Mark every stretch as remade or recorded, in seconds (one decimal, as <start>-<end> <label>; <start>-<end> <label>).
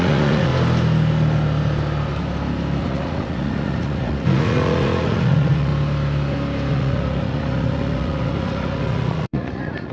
0.0-0.5 remade; 0.5-2.8 recorded; 2.8-5.7 remade; 5.7-6.7 recorded; 6.7-9.9 remade